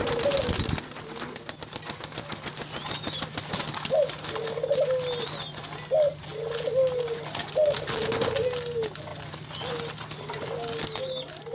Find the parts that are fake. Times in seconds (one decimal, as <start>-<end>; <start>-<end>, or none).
none

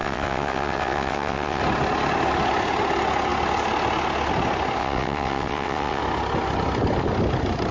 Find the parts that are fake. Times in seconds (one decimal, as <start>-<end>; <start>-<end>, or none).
0.0-1.6; 4.8-6.0

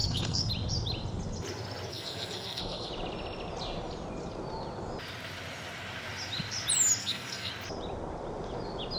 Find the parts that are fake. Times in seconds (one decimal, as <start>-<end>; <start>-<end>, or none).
0.0-0.5; 1.9-2.9; 7.0-7.5

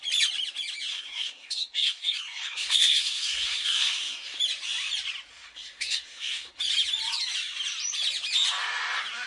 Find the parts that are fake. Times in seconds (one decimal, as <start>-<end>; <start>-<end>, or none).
0.9-4.4; 5.3-6.5

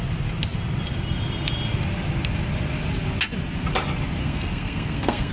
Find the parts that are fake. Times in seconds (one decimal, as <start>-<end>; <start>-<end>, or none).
4.2-5.3